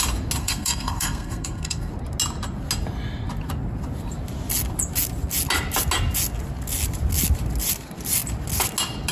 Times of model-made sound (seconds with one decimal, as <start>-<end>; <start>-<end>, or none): 0.4-1.9